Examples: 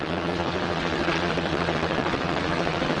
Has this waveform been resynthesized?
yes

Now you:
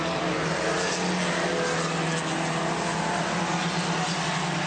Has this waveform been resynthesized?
no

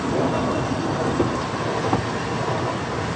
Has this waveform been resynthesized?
no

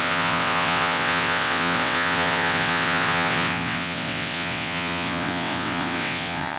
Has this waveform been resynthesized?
yes